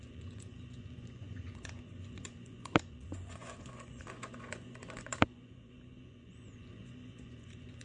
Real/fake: fake